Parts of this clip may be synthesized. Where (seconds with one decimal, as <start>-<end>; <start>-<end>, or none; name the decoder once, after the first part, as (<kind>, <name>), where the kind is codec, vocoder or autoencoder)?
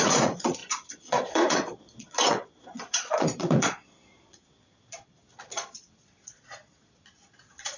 0.0-7.8 (vocoder, Vocos)